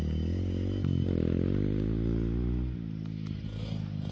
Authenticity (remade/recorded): recorded